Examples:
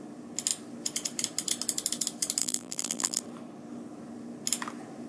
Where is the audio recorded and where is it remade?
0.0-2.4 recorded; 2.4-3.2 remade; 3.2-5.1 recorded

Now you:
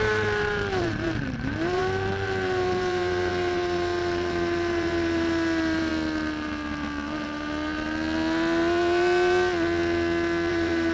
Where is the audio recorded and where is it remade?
0.0-5.9 remade; 5.9-10.5 recorded; 10.5-10.9 remade

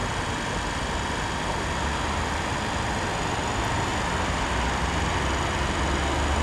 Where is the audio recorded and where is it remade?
0.0-3.9 recorded; 3.9-4.5 remade; 4.5-6.4 recorded

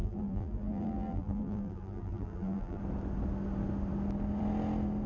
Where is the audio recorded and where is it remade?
0.0-2.8 remade; 2.8-5.1 recorded

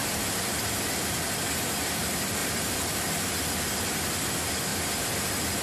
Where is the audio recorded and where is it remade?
0.0-2.4 remade; 2.4-3.6 recorded; 3.6-4.7 remade; 4.7-5.6 recorded

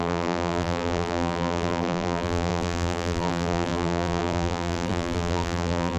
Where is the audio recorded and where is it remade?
0.0-6.0 remade

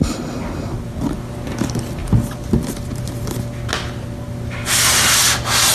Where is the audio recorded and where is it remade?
0.0-2.0 recorded; 2.0-3.2 remade; 3.2-4.6 recorded; 4.6-5.2 remade; 5.2-5.7 recorded

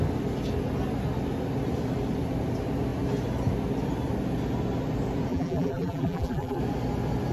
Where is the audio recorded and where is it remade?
0.0-5.3 recorded; 5.3-6.6 remade; 6.6-7.3 recorded